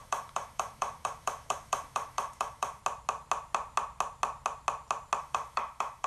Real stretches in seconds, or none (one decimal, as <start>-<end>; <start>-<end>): 2.8-5.2